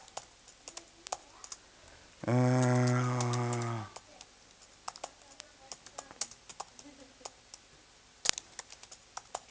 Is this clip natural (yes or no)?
yes